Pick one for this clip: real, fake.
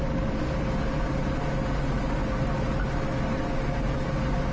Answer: real